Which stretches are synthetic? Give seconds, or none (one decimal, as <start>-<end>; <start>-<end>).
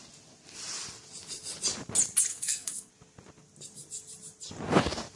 2.3-2.9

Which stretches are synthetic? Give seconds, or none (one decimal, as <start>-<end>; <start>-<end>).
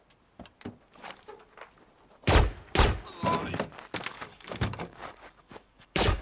4.1-6.2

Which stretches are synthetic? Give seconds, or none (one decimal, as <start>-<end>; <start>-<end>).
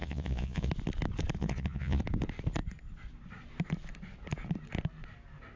0.0-0.7; 1.4-2.0